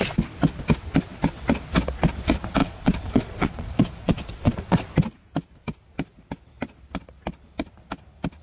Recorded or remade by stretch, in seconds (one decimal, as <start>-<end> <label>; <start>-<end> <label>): 0.0-2.6 recorded; 2.6-4.8 remade; 4.8-8.4 recorded